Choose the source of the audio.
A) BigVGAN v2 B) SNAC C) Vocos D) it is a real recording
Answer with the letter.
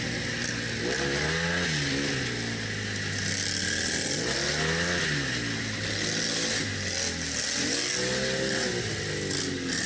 D